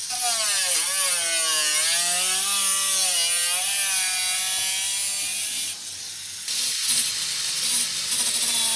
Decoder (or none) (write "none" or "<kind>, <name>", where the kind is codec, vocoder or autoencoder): none